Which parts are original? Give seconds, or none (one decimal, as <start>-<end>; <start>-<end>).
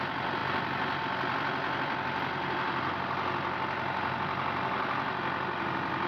0.0-6.1